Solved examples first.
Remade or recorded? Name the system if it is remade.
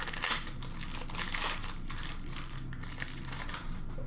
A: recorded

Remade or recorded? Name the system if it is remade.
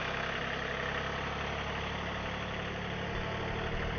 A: recorded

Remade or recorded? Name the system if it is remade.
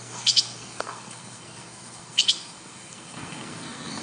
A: remade, codec, SNAC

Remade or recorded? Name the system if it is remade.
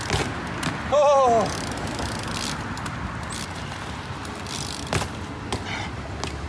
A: recorded